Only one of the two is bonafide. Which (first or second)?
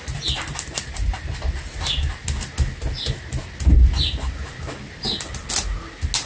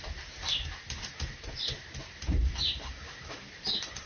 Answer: first